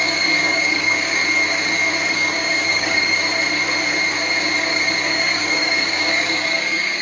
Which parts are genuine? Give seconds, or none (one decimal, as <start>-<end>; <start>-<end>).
1.2-2.1; 3.2-4.6